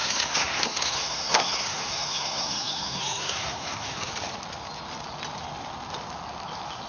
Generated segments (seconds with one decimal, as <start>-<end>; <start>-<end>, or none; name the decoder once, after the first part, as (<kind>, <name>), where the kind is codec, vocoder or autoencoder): 0.0-4.1 (codec, SNAC)